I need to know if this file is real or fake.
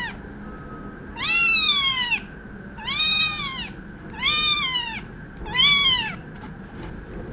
real